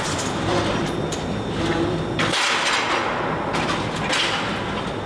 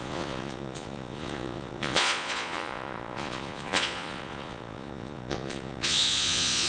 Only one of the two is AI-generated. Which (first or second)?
second